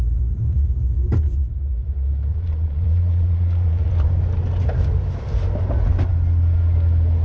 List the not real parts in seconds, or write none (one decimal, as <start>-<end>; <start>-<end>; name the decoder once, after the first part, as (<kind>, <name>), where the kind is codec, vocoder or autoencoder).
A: 2.3-3.9 (vocoder, Vocos)